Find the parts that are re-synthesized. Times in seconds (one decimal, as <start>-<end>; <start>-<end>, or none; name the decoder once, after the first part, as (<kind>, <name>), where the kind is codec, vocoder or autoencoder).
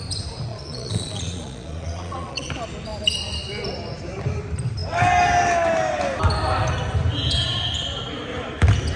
0.5-2.5 (vocoder, Vocos)